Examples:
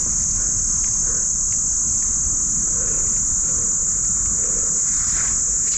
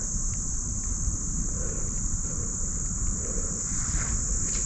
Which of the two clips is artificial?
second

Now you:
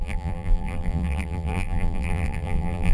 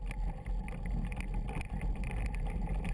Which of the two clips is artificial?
first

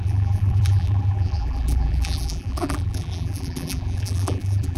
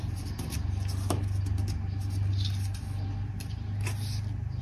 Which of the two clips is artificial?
first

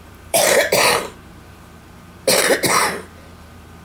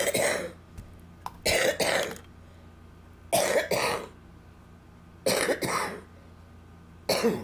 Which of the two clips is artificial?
first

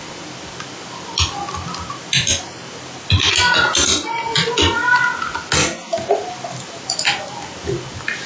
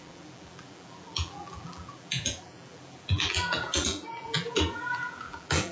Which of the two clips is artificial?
second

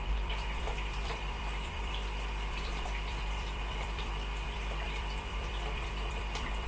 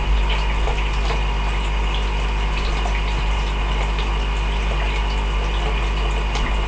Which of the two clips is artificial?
first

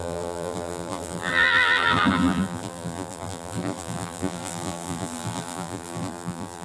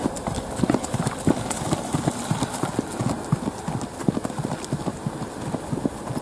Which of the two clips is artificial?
first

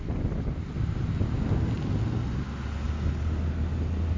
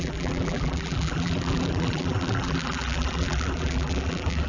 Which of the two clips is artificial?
second